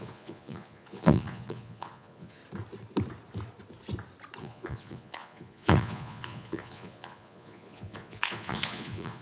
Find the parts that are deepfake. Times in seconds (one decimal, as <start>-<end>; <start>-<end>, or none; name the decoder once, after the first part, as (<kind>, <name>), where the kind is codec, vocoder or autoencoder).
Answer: 0.0-2.4 (vocoder, Vocos); 4.4-9.2